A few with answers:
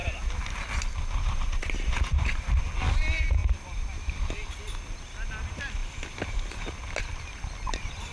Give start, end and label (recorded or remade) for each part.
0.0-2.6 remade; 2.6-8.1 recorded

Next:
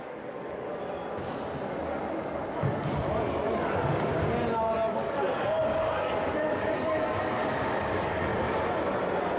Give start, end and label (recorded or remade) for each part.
0.0-0.7 remade; 0.7-3.1 recorded; 3.1-4.1 remade; 4.1-4.9 recorded; 4.9-8.3 remade; 8.3-9.4 recorded